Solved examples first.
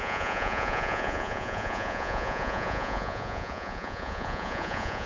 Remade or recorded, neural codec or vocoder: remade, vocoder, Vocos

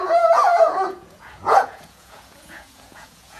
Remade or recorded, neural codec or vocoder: remade, vocoder, Vocos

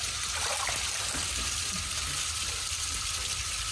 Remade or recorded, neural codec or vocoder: recorded